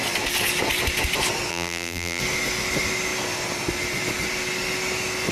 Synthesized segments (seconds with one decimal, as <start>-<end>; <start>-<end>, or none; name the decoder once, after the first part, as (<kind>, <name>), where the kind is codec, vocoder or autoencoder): 1.5-2.2 (vocoder, BigVGAN v2)